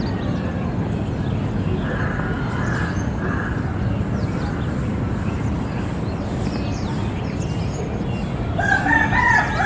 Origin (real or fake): real